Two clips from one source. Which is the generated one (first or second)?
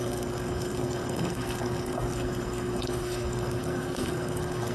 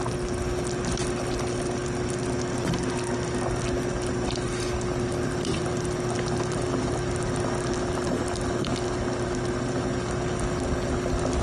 first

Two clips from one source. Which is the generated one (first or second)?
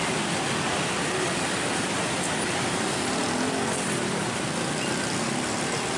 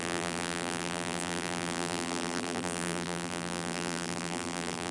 second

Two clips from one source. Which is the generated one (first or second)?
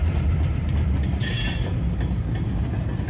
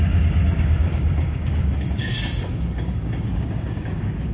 second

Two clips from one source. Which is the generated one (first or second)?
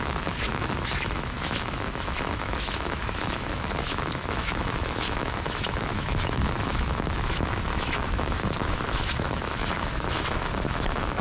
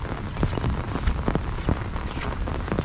first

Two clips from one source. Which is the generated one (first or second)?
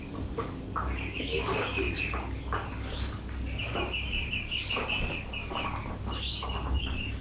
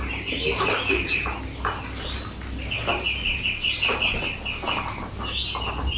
first